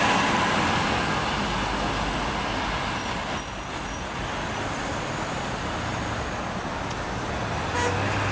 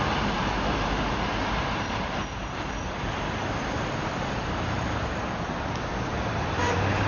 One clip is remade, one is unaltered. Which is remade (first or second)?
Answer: second